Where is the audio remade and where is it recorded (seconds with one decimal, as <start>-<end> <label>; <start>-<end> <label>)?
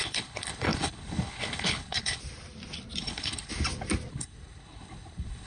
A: 0.0-2.2 remade; 2.2-3.0 recorded; 3.0-3.5 remade; 3.5-4.1 recorded; 4.1-5.5 remade